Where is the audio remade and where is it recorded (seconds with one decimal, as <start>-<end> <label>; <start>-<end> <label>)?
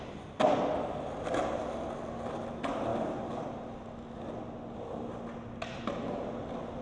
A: 0.0-6.8 recorded